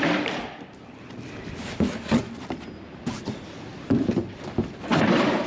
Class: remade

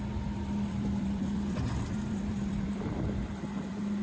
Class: remade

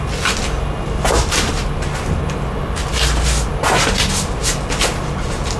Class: recorded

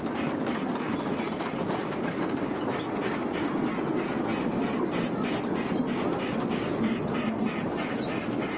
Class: recorded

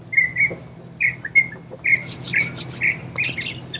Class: recorded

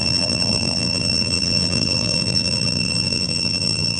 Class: remade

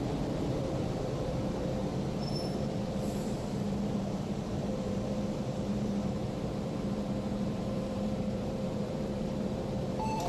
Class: remade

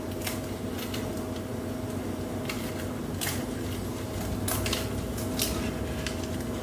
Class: recorded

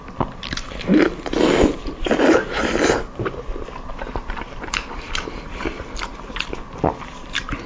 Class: remade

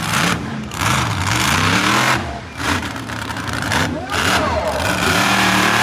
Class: remade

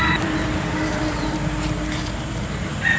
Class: remade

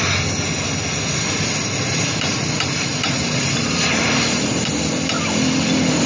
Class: recorded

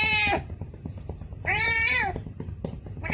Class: remade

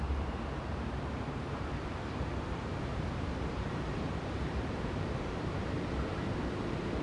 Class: remade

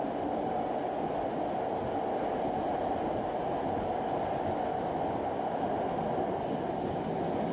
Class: recorded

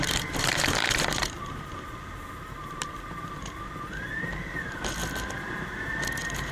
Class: remade